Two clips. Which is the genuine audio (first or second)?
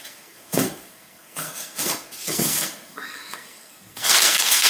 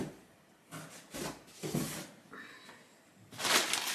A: second